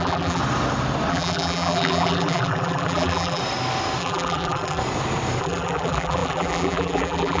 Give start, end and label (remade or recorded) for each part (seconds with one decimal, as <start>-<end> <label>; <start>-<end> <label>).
0.0-0.4 remade; 0.4-1.1 recorded; 1.1-3.4 remade; 3.4-4.0 recorded; 4.0-4.8 remade; 4.8-5.4 recorded; 5.4-7.4 remade